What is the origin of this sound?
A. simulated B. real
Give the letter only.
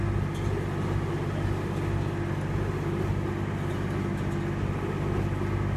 B